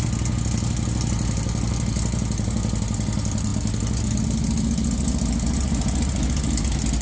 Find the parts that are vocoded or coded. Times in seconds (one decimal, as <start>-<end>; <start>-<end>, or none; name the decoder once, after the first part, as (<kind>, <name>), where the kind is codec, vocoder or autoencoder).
none